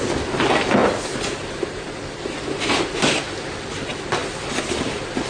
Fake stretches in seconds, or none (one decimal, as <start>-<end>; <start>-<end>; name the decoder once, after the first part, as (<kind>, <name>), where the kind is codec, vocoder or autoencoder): 0.8-3.2 (vocoder, BigVGAN v2)